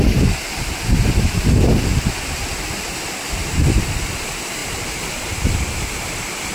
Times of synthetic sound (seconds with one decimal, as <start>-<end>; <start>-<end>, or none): none